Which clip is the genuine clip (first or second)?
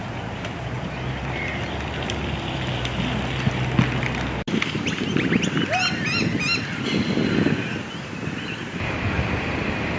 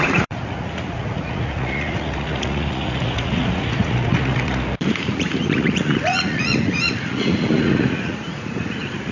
first